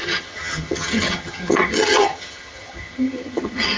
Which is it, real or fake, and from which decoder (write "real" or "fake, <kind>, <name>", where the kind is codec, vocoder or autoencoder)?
fake, vocoder, HiFi-GAN